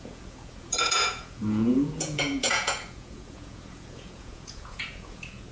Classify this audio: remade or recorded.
remade